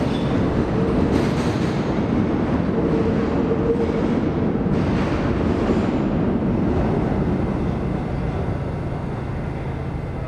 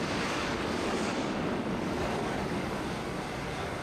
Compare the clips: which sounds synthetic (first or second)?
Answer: second